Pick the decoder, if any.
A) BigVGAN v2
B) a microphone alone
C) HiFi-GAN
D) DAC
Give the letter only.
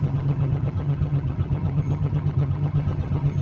C